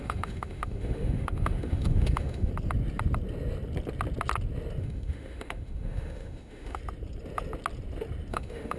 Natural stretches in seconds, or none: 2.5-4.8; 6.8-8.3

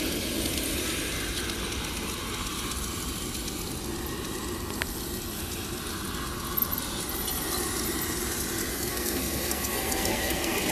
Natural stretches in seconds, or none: 0.0-8.7